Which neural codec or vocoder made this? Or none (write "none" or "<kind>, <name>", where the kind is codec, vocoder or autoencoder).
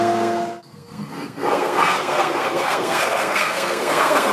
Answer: codec, SNAC